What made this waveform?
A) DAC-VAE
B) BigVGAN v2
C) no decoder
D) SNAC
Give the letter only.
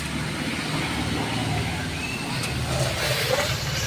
C